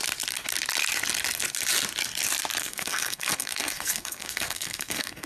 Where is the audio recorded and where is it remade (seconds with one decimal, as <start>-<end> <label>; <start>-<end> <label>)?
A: 0.0-2.6 recorded; 2.6-5.3 remade